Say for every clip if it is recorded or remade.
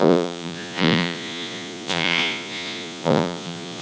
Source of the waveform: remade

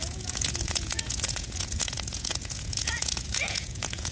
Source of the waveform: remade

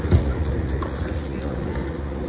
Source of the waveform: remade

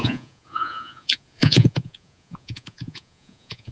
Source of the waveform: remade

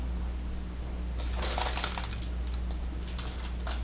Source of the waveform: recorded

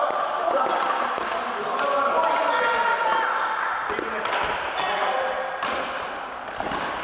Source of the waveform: recorded